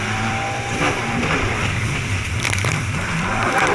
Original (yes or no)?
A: no